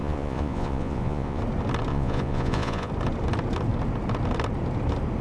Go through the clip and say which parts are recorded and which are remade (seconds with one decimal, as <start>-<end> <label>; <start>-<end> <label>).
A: 0.0-1.4 remade; 1.4-1.9 recorded; 1.9-2.9 remade; 2.9-5.2 recorded